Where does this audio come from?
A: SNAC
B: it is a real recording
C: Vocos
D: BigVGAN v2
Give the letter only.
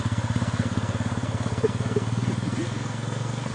A